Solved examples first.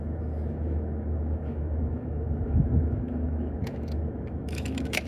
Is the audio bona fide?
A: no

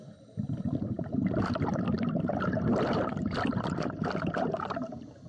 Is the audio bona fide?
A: yes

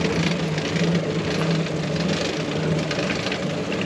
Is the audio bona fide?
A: yes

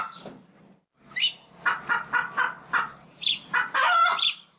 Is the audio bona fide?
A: yes